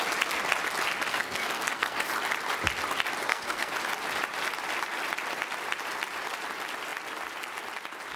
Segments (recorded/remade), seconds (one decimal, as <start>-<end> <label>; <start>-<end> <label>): 0.0-1.1 recorded; 1.1-2.1 remade; 2.1-3.2 recorded; 3.2-3.7 remade; 3.7-8.2 recorded